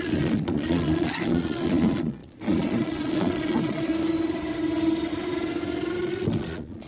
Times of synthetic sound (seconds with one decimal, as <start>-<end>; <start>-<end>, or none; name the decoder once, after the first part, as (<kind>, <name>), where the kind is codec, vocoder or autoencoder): 0.0-3.9 (vocoder, Vocos); 6.0-6.9